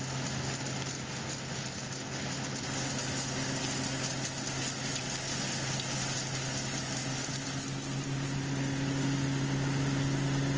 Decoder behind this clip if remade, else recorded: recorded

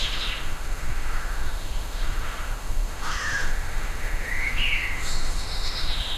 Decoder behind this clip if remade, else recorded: remade, autoencoder, DAC-VAE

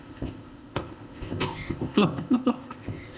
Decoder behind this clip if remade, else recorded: remade, codec, ZipCodec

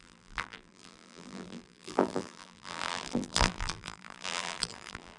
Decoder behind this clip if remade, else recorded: remade, vocoder, BigVGAN v2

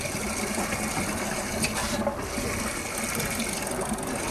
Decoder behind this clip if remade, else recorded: recorded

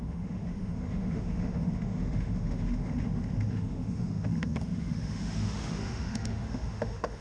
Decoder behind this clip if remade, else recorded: remade, autoencoder, DAC-VAE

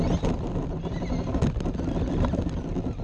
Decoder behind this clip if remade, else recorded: recorded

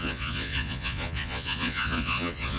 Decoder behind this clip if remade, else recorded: remade, vocoder, Vocos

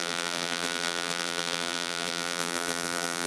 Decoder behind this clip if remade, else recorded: remade, vocoder, BigVGAN v2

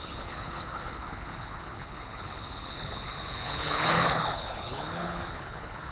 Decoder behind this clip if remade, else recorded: remade, codec, HILCodec